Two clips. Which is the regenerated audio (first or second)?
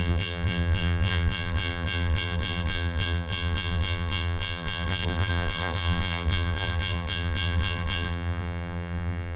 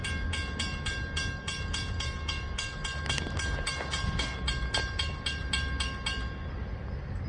first